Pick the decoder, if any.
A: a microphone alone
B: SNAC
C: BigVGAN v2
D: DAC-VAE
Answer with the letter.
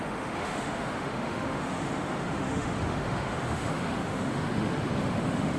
D